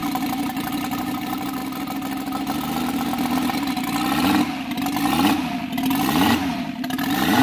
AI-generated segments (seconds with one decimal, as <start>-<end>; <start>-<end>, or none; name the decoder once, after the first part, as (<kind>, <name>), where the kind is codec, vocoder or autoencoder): 0.0-1.6 (vocoder, BigVGAN v2); 6.0-7.4